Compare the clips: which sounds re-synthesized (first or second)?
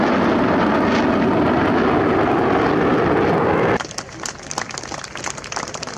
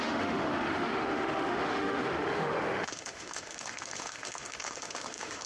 second